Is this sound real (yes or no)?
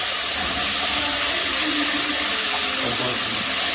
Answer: yes